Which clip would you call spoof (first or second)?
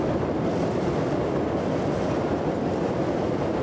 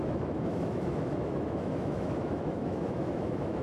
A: second